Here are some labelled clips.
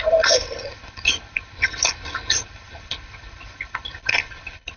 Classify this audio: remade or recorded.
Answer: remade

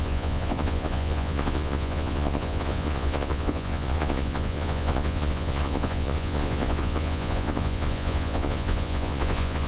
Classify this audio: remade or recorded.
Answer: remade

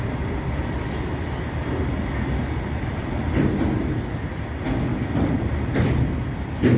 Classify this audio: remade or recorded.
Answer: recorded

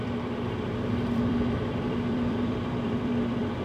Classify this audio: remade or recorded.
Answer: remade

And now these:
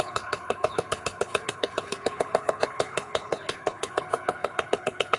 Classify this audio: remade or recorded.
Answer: remade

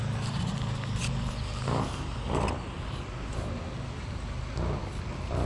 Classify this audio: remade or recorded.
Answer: recorded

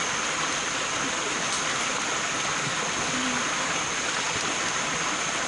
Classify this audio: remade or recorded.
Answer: recorded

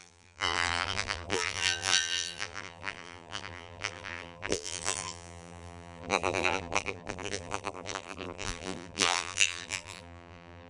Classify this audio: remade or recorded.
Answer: remade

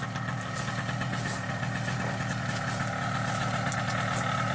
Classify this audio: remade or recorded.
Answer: recorded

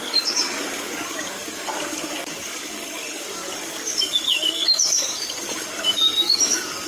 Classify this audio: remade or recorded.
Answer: remade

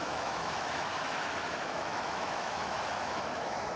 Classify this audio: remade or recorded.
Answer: remade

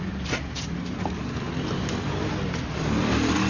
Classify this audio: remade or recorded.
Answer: recorded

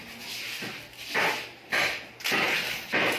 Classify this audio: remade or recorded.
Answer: recorded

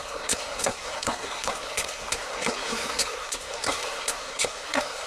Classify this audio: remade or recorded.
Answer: remade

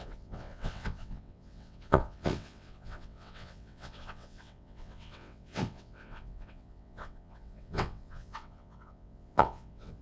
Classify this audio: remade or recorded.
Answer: remade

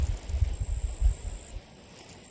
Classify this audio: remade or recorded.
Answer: recorded